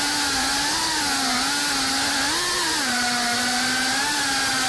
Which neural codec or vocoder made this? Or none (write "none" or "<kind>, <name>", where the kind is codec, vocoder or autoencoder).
none